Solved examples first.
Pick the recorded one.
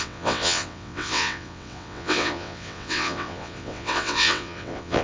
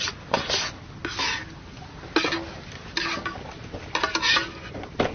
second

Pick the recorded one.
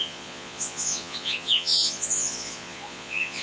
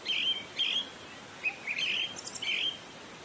second